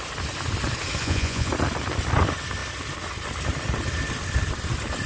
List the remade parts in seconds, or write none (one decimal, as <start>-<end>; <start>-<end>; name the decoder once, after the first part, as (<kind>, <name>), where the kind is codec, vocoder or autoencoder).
1.0-1.5 (vocoder, Vocos)